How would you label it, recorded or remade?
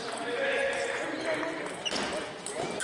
recorded